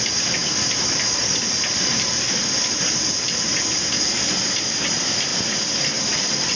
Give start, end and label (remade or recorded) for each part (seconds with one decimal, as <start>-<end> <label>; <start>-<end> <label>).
0.0-6.6 remade